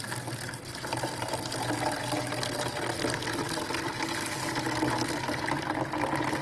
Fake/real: real